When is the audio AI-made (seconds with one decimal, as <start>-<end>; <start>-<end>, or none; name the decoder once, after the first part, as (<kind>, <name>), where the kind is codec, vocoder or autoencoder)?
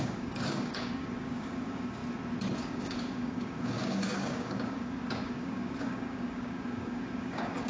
0.0-2.0 (codec, DAC); 2.6-7.7